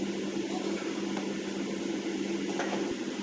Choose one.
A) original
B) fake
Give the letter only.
A